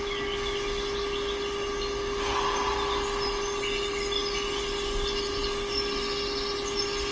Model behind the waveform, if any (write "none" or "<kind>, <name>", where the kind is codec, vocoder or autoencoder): none